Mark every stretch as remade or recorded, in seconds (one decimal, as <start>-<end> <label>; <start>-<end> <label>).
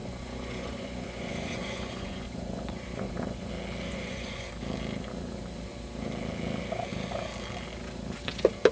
0.0-3.5 remade; 3.5-3.9 recorded; 3.9-4.5 remade; 4.5-8.7 recorded